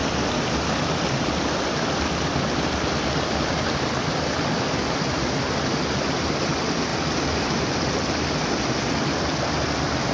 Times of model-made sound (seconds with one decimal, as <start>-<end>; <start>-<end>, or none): 0.0-3.9; 6.9-7.6